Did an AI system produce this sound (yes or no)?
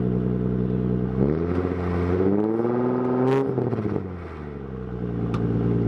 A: no